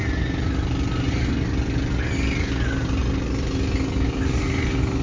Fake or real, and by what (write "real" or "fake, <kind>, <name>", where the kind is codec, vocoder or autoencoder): real